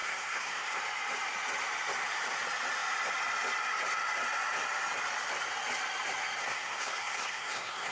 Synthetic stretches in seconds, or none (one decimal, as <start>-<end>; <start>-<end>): 0.0-0.8; 6.4-7.9